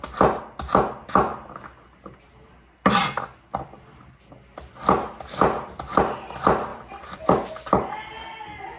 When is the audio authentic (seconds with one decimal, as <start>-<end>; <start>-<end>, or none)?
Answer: 0.0-6.7; 7.5-8.8